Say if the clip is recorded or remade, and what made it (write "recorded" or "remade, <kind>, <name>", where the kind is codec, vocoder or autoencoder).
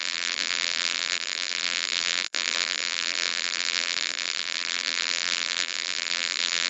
remade, vocoder, BigVGAN v2